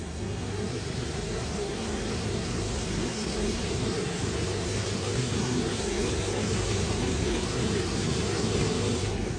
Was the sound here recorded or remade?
remade